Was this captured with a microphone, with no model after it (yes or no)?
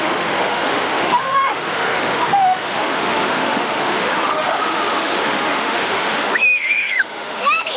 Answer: no